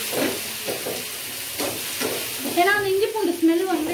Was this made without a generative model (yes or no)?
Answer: yes